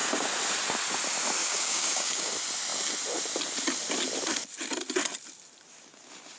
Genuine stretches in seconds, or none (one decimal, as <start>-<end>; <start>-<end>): 0.0-1.4; 2.3-6.4